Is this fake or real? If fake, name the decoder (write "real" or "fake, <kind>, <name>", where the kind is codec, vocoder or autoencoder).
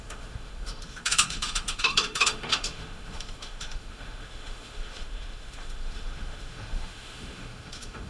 fake, autoencoder, DAC-VAE